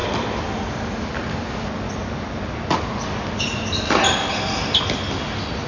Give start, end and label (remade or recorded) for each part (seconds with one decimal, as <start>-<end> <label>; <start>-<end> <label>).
0.0-5.7 recorded